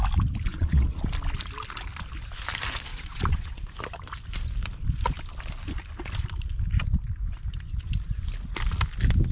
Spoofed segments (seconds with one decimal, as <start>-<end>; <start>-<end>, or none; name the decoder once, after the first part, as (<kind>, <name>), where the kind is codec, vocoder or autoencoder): 0.5-1.0 (vocoder, Vocos); 2.9-3.7